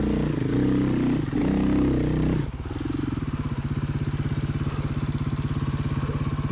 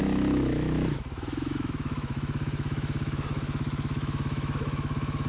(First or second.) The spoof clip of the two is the second